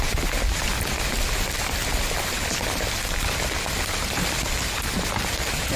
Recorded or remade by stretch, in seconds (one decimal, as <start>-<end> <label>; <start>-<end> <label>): 0.0-5.8 recorded